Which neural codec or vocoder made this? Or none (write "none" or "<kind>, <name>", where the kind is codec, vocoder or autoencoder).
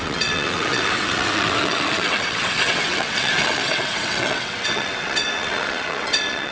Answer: vocoder, WaveNeXt